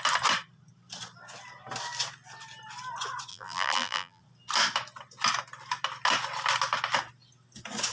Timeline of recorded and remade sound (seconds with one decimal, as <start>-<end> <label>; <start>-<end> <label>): 0.0-3.3 recorded; 3.3-4.2 remade; 4.2-7.9 recorded